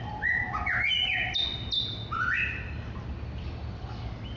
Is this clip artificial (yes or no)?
no